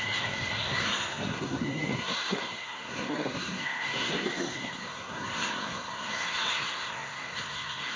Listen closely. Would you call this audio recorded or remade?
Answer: remade